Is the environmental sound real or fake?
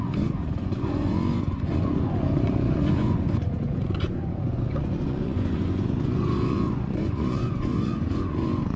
fake